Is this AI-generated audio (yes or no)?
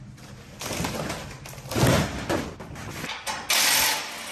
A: no